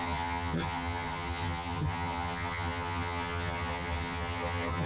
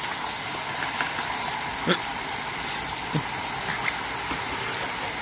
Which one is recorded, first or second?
second